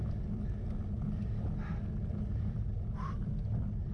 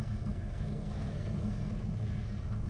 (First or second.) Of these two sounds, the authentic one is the first